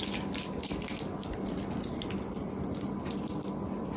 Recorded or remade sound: recorded